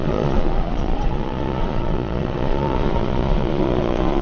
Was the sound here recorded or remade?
remade